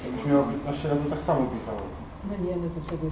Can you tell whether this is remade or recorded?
recorded